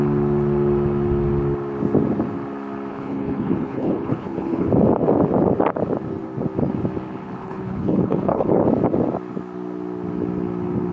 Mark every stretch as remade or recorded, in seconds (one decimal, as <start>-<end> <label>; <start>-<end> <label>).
0.0-2.9 recorded; 2.9-4.7 remade; 4.7-7.4 recorded; 7.4-8.6 remade; 8.6-10.9 recorded